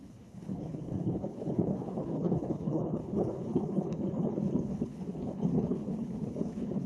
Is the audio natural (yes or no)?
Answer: no